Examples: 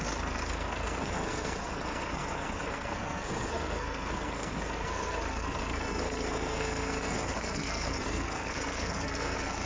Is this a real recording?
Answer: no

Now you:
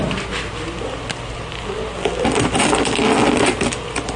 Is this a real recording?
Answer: yes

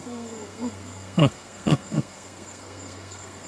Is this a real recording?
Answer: no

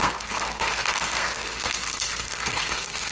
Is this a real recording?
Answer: no